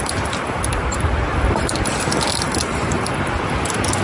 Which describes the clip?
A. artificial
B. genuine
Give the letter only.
B